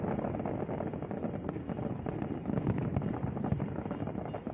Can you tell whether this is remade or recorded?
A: recorded